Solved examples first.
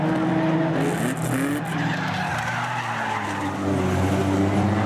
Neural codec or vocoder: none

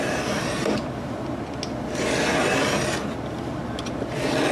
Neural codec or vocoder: none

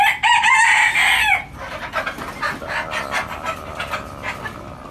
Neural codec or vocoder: none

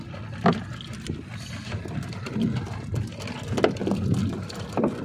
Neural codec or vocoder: none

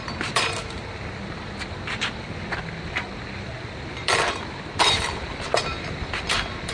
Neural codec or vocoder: vocoder, BigVGAN v2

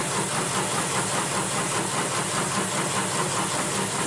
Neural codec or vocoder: none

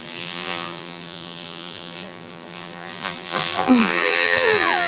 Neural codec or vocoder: vocoder, BigVGAN v2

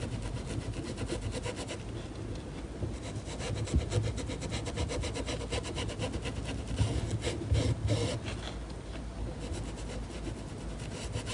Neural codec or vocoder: none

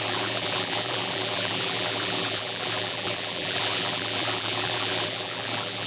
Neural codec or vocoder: vocoder, BigVGAN v2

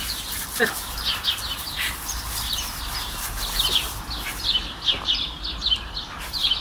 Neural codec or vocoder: vocoder, BigVGAN v2